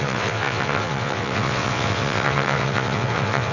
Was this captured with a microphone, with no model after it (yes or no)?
no